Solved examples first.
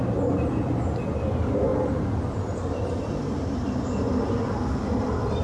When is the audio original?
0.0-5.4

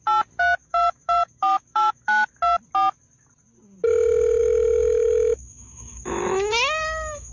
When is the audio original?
0.0-0.6; 2.3-4.4

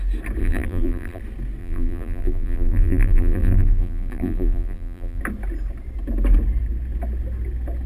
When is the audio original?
0.0-0.4; 1.2-1.6; 5.2-7.9

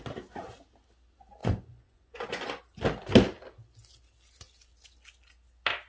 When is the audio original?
0.0-1.4; 2.6-5.9

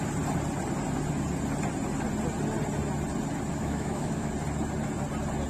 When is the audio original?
0.0-3.6; 4.3-5.5

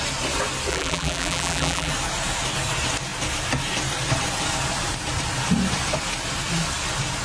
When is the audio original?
0.0-0.7; 1.9-7.2

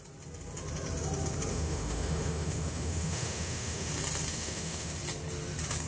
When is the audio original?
0.0-1.5; 3.9-4.3; 4.9-5.9

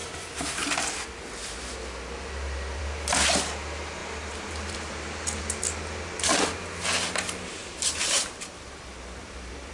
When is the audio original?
0.0-4.0; 5.4-7.6